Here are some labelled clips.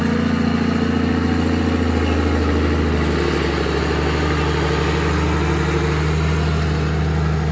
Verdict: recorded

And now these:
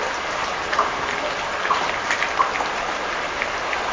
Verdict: recorded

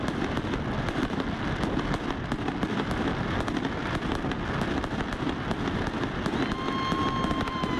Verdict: recorded